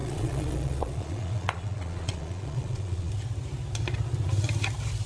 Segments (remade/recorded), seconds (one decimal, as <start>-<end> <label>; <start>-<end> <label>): 0.0-3.1 remade; 3.1-5.1 recorded